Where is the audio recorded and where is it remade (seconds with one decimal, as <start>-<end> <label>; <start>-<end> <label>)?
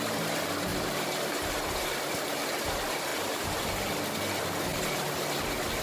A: 0.0-0.7 recorded; 0.7-2.1 remade; 2.1-3.1 recorded; 3.1-3.6 remade; 3.6-4.7 recorded; 4.7-5.2 remade; 5.2-5.8 recorded